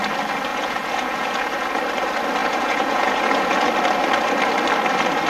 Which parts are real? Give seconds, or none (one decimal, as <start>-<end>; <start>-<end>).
0.0-0.5; 1.8-2.4; 3.7-5.3